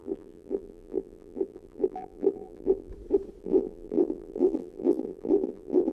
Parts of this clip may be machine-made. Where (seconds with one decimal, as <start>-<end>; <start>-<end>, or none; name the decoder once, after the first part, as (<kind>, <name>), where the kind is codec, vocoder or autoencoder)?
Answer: 0.0-2.9 (vocoder, BigVGAN v2); 3.4-5.9